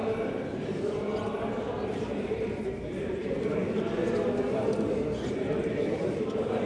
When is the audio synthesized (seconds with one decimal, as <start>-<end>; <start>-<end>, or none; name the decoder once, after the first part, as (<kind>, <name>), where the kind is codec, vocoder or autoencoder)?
0.5-1.1 (vocoder, BigVGAN v2); 1.9-4.0; 5.7-6.7